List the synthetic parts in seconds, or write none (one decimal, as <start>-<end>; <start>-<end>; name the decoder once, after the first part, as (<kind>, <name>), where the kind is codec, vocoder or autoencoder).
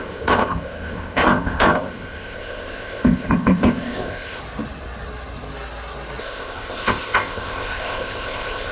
0.0-4.4 (codec, ZipCodec); 6.2-8.7